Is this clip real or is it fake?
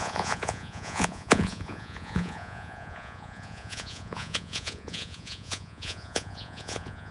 fake